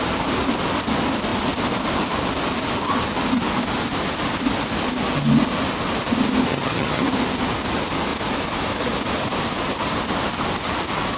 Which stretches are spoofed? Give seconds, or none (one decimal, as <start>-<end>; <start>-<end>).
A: 6.5-7.1

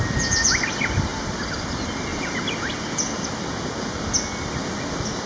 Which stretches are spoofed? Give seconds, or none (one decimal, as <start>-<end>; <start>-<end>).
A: 1.1-1.6; 2.1-3.3

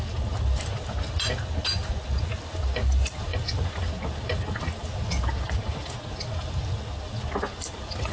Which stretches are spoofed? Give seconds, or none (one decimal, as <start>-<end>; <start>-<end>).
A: none

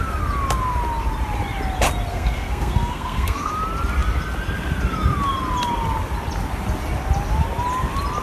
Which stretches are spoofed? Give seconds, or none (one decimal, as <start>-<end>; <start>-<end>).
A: 2.1-3.5

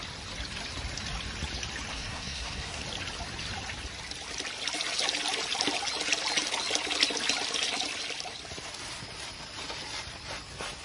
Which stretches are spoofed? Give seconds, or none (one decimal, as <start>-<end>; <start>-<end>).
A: 1.9-2.8

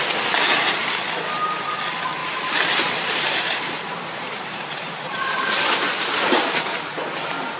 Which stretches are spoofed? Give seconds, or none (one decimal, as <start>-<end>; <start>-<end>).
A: 2.2-6.6

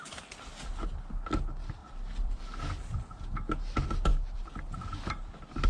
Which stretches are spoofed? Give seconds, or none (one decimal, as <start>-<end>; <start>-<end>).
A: 1.8-2.4

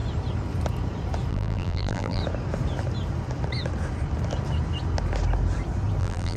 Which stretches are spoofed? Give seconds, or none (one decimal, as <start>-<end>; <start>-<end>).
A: 1.3-2.2; 6.0-6.4